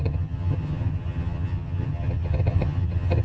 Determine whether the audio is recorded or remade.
remade